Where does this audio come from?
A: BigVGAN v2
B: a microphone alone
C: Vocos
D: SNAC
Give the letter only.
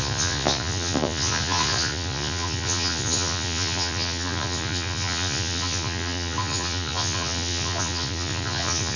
C